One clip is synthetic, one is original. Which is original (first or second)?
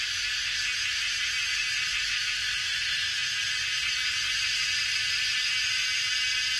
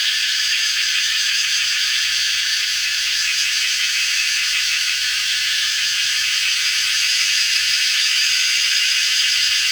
first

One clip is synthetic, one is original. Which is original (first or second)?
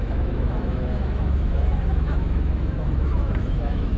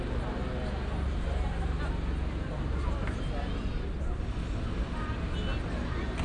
second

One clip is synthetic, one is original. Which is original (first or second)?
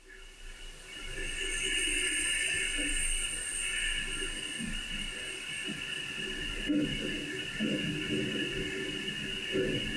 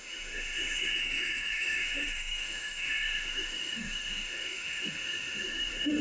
first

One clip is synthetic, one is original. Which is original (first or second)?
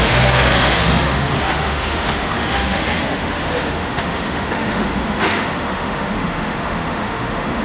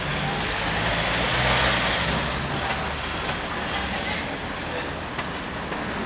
second